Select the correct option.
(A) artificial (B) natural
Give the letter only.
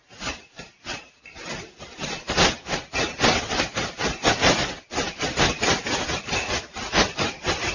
B